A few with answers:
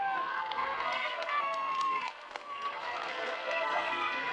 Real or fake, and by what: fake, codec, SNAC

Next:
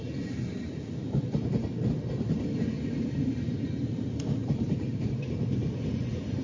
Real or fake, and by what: fake, vocoder, BigVGAN v2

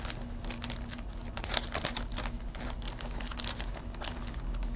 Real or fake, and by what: real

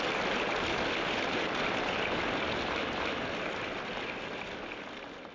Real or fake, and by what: real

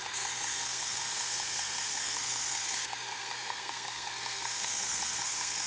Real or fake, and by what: fake, codec, SNAC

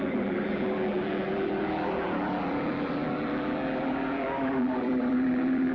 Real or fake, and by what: fake, vocoder, BigVGAN v2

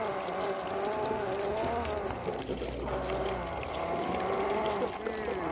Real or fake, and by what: real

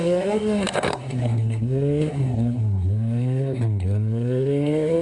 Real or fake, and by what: fake, codec, SNAC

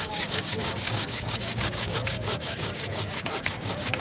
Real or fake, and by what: fake, codec, DAC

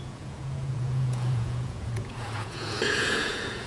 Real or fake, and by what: fake, vocoder, Vocos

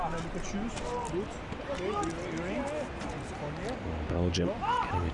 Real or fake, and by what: real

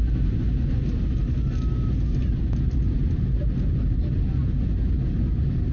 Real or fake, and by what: real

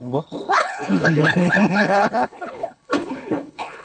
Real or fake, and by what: fake, codec, HILCodec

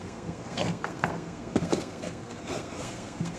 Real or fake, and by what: fake, codec, SNAC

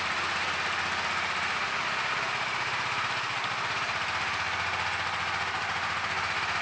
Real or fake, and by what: real